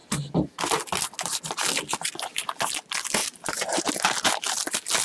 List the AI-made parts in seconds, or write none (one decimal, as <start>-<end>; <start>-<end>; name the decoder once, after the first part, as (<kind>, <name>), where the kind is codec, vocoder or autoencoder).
3.2-3.9 (vocoder, BigVGAN v2)